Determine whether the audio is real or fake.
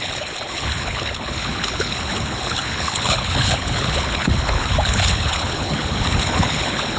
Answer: fake